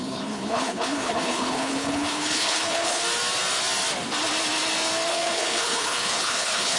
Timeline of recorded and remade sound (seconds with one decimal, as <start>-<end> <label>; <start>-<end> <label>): 0.0-3.0 remade; 3.0-5.1 recorded; 5.1-6.8 remade